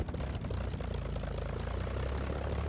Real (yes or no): yes